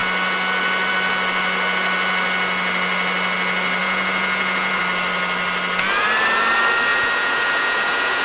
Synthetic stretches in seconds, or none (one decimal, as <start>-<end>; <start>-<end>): 3.8-4.8; 6.9-8.2